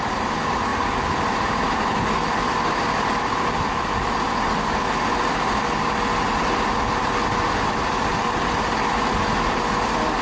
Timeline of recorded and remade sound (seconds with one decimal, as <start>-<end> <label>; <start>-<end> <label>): 0.0-10.2 recorded